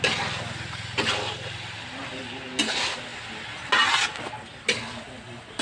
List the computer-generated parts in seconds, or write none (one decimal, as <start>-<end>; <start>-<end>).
none

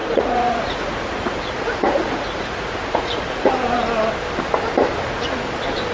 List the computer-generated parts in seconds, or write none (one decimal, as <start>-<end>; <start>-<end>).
0.0-3.5

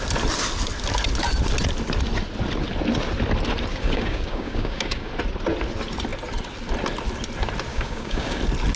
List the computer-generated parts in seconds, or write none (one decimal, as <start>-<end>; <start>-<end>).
3.7-5.1; 7.7-8.4

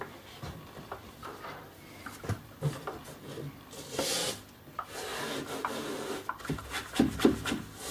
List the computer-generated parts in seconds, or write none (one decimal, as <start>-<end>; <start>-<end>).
0.0-4.6